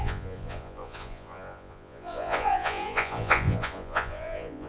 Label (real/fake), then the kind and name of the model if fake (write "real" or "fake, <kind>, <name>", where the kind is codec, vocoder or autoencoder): fake, vocoder, Vocos